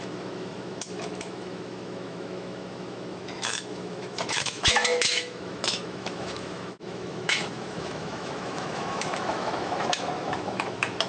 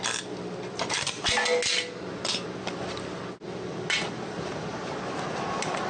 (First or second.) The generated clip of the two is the first